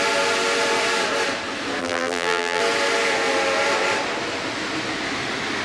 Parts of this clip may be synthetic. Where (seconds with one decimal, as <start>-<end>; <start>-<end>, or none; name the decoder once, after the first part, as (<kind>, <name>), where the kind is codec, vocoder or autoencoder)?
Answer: 1.8-2.6 (vocoder, BigVGAN v2)